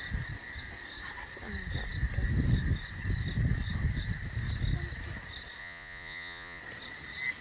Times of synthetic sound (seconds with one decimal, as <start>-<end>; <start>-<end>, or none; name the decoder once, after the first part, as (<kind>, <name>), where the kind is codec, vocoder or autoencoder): 5.6-6.6 (vocoder, Vocos)